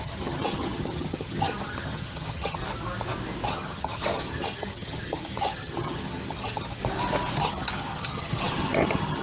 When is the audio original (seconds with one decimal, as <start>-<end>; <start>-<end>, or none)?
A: 2.6-3.5; 6.8-7.4